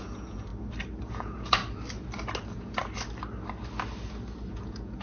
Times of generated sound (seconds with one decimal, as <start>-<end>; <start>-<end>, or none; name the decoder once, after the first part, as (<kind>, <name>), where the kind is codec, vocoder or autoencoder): 0.0-0.5 (vocoder, Vocos); 1.0-1.6; 2.4-2.8; 4.5-5.0